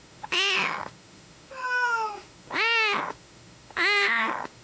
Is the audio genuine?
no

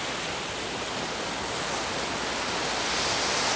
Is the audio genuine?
yes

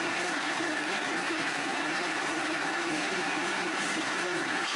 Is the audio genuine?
no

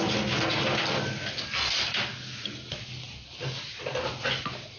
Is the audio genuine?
yes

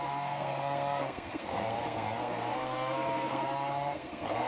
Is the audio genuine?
no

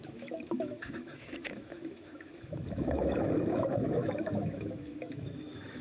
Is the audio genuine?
no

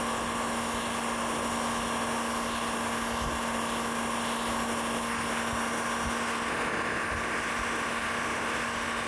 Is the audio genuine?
yes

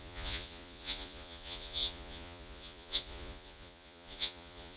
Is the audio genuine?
no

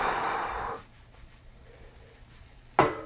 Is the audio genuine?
yes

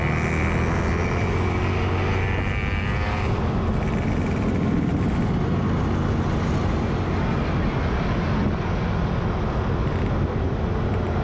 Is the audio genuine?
yes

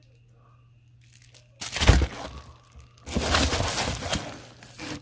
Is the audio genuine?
yes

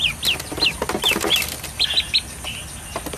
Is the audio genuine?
yes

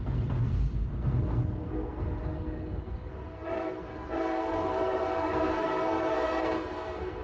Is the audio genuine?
no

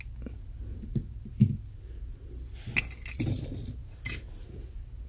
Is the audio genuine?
yes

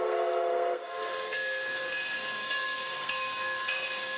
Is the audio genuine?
no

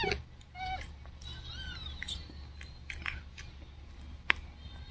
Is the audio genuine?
yes